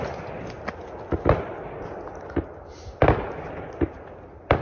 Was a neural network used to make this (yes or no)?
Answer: no